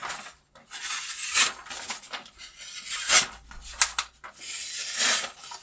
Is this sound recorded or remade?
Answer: recorded